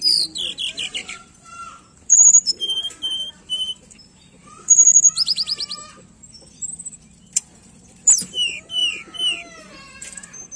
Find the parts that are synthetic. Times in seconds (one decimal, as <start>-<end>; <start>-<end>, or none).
0.0-8.8; 9.6-10.6